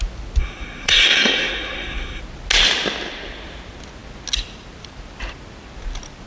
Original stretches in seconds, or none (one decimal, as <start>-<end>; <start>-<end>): 0.0-0.4; 2.2-6.3